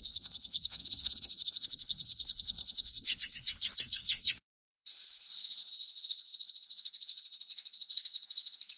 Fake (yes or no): yes